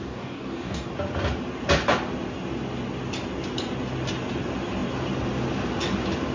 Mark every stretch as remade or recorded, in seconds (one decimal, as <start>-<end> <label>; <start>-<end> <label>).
0.0-0.9 remade; 0.9-6.3 recorded